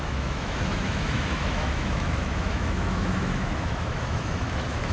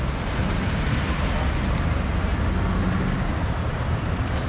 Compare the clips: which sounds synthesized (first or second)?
first